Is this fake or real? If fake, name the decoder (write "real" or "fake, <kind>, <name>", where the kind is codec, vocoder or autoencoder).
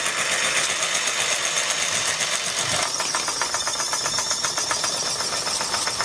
real